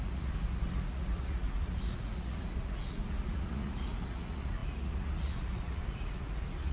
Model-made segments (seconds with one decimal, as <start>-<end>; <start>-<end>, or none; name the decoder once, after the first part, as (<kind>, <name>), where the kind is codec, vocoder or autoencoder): 0.0-6.7 (vocoder, Vocos)